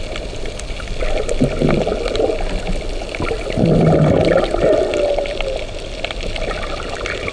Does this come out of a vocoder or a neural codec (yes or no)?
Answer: no